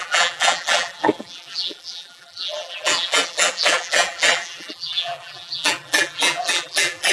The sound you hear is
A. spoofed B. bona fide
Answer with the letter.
A